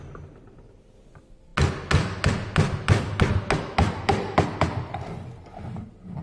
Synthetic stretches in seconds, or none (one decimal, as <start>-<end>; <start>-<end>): none